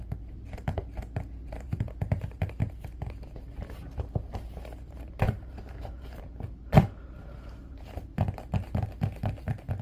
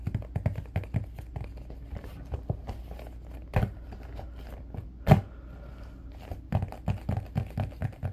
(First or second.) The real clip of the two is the second